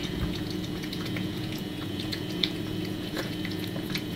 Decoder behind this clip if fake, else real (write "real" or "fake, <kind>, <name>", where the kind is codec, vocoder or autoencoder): fake, vocoder, Vocos